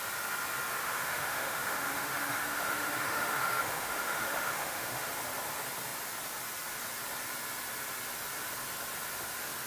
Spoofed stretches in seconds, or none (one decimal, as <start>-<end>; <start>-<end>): 0.8-5.1